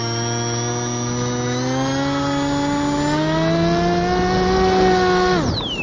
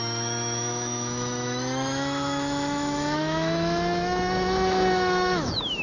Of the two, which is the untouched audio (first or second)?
first